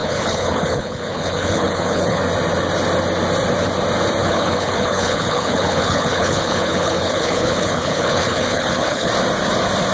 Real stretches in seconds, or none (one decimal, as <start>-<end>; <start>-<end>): 2.2-4.2; 9.1-9.9